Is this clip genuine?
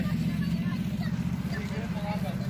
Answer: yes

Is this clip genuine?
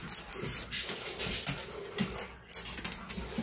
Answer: yes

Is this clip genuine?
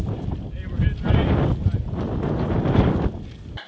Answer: yes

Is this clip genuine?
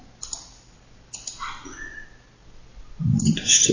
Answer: yes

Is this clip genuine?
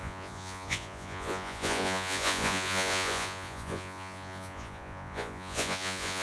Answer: no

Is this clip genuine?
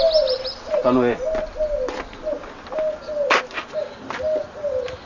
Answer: yes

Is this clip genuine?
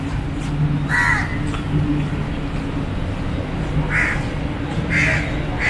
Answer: yes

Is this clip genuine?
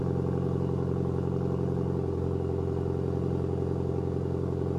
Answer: yes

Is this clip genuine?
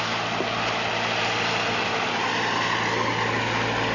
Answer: yes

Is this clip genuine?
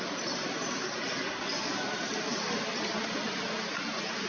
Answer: yes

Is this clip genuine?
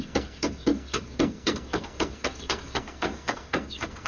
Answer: no